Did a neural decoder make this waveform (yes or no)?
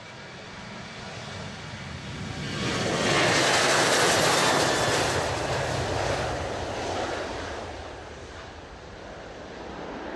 no